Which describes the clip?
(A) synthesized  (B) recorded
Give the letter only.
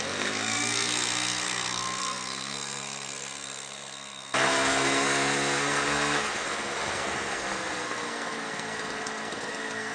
A